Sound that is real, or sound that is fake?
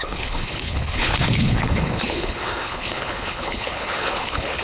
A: fake